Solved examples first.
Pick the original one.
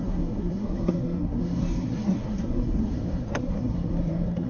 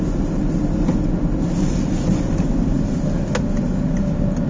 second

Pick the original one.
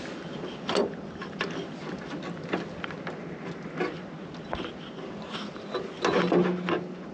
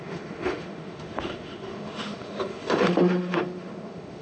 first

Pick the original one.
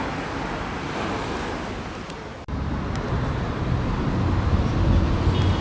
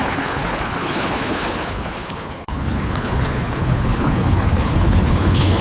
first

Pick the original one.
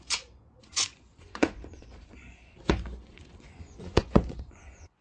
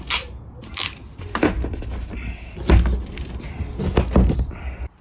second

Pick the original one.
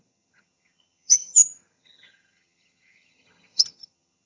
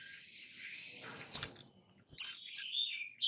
second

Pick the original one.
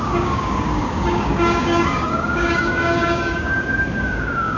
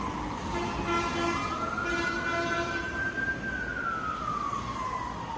second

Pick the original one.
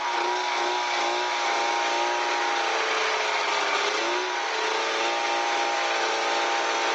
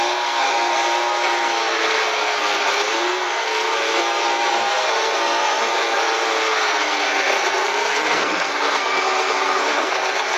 first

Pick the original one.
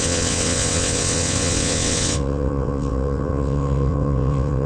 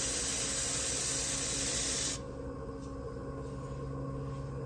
second